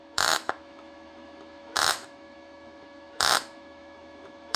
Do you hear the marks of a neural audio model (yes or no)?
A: yes